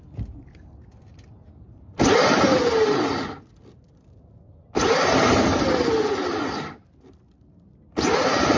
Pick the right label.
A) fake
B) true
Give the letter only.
B